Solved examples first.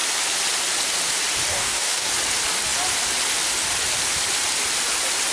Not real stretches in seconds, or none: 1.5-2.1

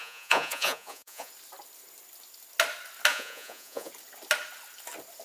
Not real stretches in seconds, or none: 0.0-1.3; 3.1-3.9

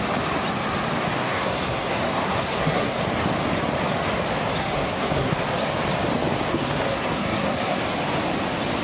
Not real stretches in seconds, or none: 1.2-3.0; 4.6-5.4; 6.5-7.8

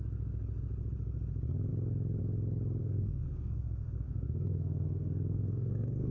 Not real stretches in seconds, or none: 2.8-6.1

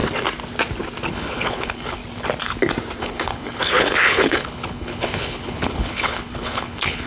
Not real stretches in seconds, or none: 1.1-2.0; 3.0-7.1